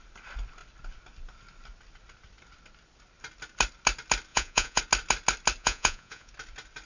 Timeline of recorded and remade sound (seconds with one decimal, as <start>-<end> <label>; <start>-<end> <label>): 0.0-4.3 recorded; 4.3-4.8 remade; 4.8-5.6 recorded; 5.6-6.3 remade; 6.3-6.9 recorded